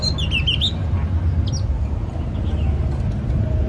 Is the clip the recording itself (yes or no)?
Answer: yes